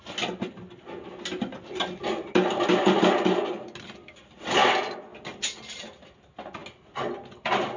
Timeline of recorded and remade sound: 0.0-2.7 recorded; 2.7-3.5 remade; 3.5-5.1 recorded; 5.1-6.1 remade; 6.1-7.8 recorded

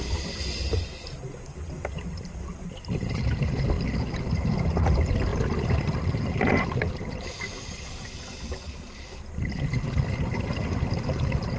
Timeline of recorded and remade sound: 0.0-11.6 recorded